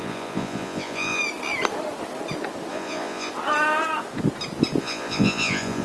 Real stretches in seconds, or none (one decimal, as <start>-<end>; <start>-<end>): 1.2-2.7; 3.3-4.8